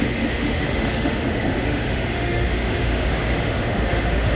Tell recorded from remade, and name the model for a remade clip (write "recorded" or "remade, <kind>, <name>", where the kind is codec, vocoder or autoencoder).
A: remade, autoencoder, DAC-VAE